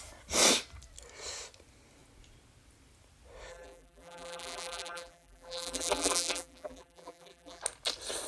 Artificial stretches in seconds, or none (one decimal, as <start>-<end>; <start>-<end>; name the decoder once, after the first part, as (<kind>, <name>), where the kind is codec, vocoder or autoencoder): 3.5-7.6 (vocoder, BigVGAN v2)